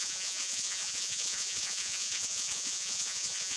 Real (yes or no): no